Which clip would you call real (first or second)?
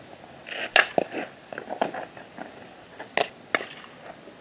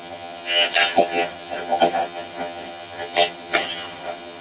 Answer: first